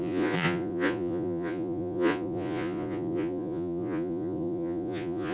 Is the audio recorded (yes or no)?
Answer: no